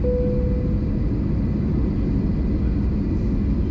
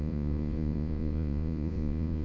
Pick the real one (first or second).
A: first